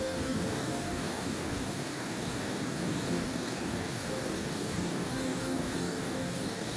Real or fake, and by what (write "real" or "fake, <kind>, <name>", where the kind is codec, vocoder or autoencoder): fake, codec, DAC